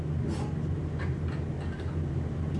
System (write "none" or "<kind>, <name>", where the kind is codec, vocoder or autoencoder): none